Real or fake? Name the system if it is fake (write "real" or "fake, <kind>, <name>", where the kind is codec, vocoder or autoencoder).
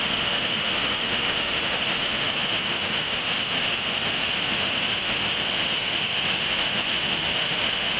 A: fake, autoencoder, DAC-VAE